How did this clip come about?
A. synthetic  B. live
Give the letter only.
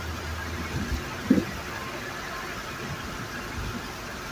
B